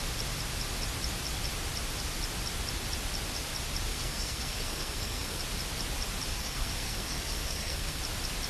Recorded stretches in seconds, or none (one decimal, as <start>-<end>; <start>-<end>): 0.0-3.9; 5.4-6.3; 8.0-8.5

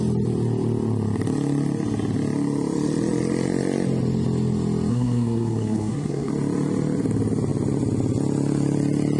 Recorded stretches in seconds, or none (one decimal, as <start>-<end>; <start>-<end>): 0.0-4.9; 6.3-9.2

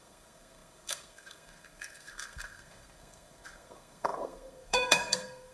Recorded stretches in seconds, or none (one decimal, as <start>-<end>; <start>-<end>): none

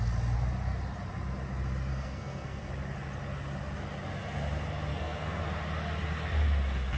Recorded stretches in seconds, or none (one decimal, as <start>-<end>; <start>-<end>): 0.0-1.9; 2.7-4.9; 5.4-7.0

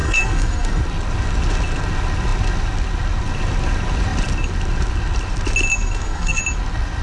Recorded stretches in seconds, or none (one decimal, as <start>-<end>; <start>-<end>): 0.8-5.7; 6.4-7.0